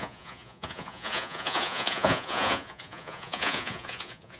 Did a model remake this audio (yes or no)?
yes